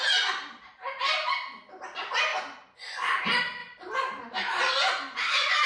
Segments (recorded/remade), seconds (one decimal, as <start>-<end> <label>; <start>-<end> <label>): 0.0-3.6 recorded; 3.6-4.6 remade; 4.6-5.7 recorded